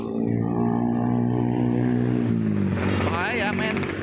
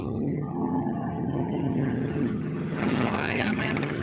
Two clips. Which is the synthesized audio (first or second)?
second